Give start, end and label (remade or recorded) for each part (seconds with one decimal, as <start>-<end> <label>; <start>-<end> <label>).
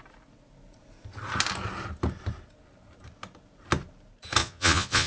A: 0.0-4.4 recorded; 4.4-5.1 remade